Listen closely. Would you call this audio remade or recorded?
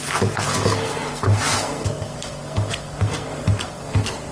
remade